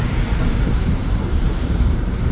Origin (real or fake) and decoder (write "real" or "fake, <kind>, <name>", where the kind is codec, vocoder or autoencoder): fake, vocoder, BigVGAN v2